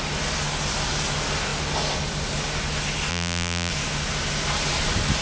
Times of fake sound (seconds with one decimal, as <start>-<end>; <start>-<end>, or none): 3.1-3.7